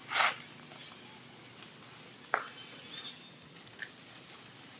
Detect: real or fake real